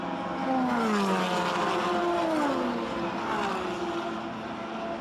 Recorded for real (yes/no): yes